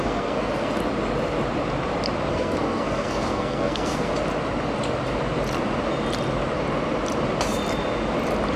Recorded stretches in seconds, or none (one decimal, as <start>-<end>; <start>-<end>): 0.8-2.3; 4.1-8.6

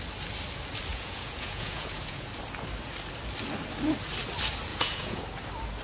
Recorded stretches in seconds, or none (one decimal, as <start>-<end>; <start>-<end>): 0.0-0.9; 2.3-4.7; 5.2-5.8